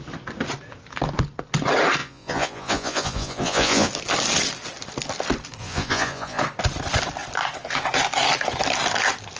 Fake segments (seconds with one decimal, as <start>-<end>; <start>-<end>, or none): 2.0-3.9; 5.6-6.4